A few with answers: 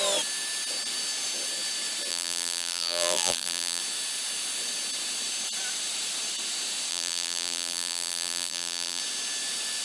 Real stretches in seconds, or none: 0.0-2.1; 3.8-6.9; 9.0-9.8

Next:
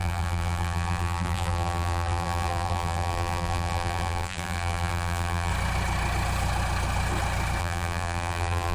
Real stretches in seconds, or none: 5.5-7.6